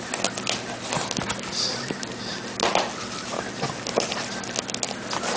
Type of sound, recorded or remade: recorded